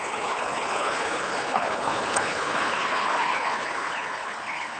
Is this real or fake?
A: fake